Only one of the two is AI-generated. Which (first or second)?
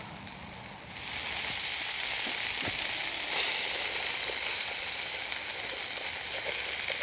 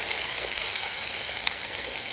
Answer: second